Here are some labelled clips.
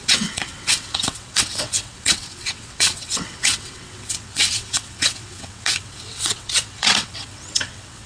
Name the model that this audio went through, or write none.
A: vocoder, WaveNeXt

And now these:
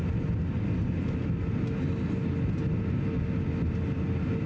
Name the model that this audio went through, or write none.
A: none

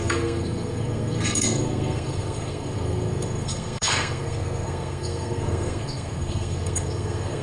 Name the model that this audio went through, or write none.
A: codec, SNAC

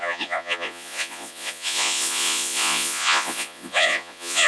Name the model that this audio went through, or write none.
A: vocoder, Vocos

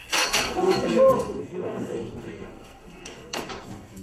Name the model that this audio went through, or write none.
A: codec, SNAC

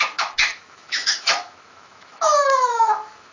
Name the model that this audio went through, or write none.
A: autoencoder, DAC-VAE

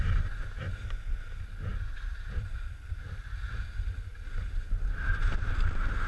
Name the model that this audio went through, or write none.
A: none